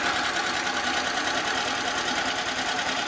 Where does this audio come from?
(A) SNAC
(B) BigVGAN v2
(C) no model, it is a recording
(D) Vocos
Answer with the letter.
C